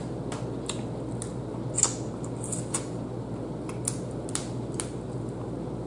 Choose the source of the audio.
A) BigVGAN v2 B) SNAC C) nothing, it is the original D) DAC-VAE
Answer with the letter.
C